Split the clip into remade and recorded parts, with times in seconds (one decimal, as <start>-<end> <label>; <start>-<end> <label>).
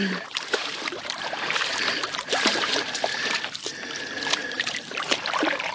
0.0-5.7 remade